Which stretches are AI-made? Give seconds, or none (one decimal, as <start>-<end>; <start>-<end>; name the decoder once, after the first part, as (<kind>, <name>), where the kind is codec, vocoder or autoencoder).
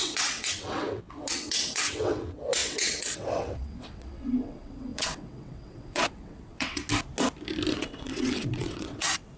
0.0-6.8 (vocoder, WaveNeXt); 7.7-9.4